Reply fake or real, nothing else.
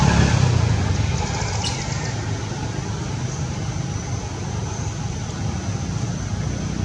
real